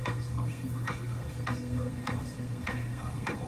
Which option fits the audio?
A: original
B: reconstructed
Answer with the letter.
B